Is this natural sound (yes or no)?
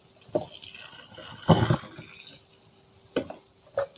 yes